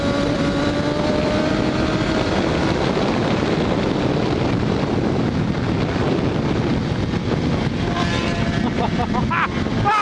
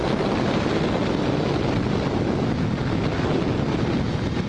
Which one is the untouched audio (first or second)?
second